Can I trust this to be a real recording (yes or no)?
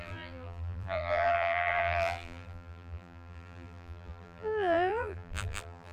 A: no